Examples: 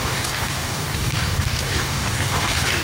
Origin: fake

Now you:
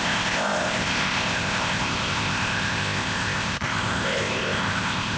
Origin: fake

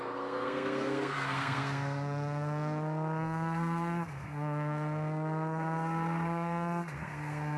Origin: fake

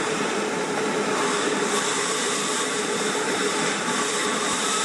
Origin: fake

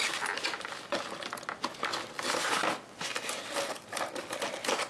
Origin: real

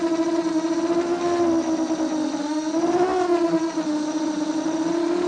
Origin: real